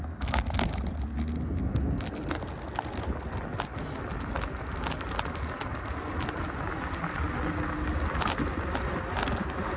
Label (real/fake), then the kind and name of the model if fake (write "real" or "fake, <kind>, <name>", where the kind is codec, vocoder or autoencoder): real